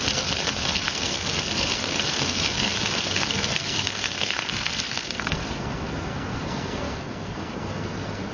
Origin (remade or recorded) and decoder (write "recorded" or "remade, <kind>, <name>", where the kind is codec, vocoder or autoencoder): remade, codec, SNAC